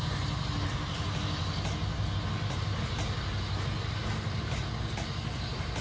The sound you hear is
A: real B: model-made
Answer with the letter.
A